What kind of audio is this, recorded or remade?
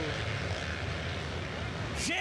recorded